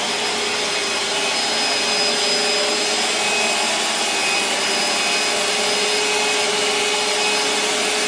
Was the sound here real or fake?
real